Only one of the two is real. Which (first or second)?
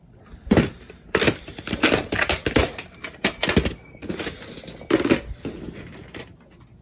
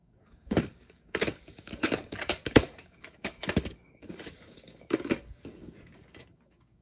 first